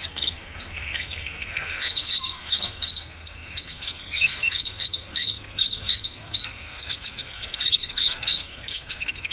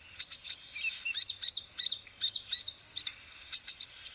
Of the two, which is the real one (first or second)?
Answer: second